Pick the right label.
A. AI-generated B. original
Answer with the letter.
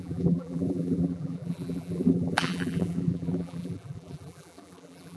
A